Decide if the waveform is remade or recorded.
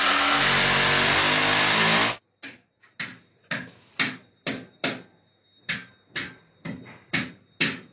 recorded